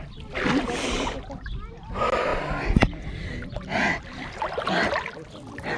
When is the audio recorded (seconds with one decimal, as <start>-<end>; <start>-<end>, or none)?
0.0-5.8